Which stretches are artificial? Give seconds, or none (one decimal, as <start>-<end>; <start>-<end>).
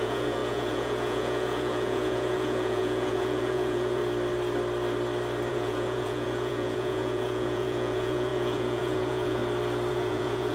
0.0-4.0; 5.5-9.4; 9.9-10.5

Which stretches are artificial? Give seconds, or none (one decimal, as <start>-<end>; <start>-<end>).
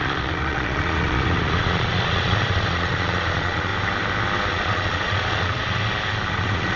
0.0-3.7; 4.5-5.8; 6.3-6.8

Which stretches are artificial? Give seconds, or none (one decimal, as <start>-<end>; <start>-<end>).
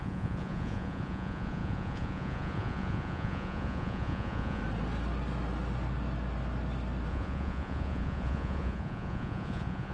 0.0-4.6; 7.1-9.9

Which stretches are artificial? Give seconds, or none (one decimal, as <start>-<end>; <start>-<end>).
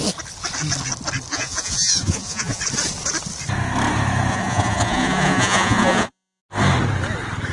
1.3-2.6; 4.3-6.4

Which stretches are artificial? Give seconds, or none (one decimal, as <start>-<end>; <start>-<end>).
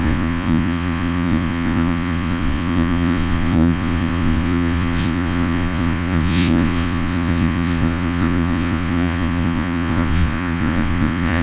0.0-11.4